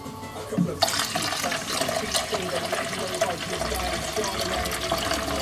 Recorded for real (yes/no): yes